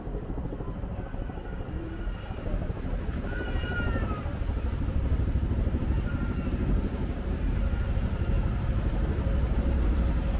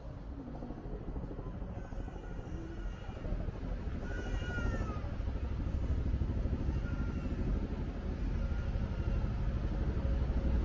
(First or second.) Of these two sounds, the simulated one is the first